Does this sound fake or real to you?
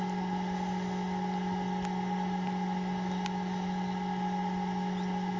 real